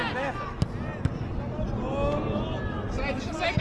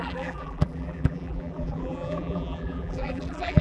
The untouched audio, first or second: first